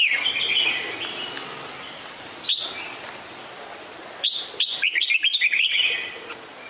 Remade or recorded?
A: recorded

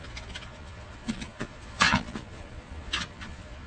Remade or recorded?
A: remade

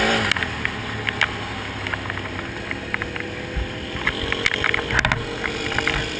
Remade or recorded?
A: recorded